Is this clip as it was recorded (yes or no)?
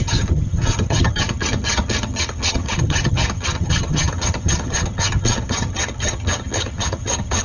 no